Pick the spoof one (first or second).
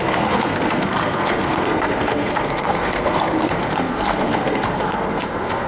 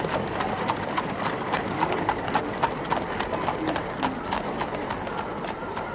first